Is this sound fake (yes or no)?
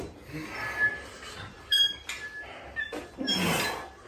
no